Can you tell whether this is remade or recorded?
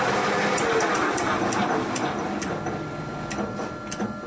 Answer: recorded